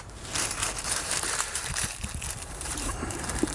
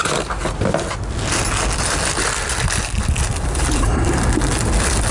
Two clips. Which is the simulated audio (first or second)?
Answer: first